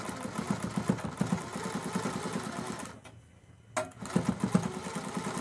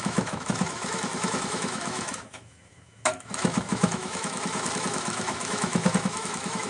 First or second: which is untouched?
first